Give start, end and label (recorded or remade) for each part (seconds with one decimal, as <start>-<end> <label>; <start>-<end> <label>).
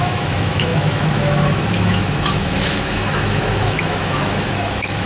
0.0-5.1 remade